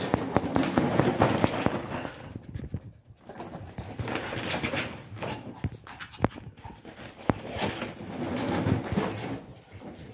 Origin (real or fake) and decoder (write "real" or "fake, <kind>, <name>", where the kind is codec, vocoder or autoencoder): real